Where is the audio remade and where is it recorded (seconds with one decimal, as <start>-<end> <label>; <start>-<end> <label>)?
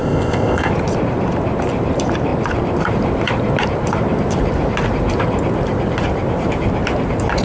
0.0-0.7 remade; 0.7-7.4 recorded